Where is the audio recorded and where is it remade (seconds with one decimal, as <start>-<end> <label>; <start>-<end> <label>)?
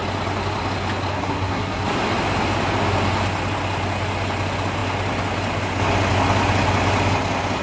0.0-1.1 recorded; 1.1-1.8 remade; 1.8-7.6 recorded